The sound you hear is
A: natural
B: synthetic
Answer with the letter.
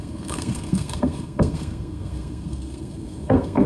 B